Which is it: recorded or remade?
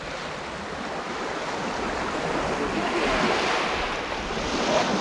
recorded